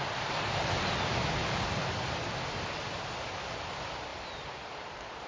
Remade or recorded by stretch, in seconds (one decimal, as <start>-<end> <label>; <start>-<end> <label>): 0.0-5.3 recorded